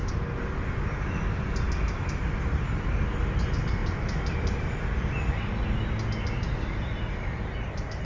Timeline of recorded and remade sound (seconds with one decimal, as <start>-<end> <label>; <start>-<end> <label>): 0.0-8.0 recorded